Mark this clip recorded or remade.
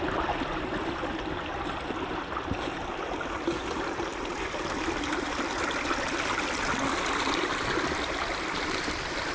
recorded